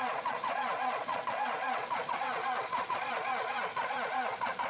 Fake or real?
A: fake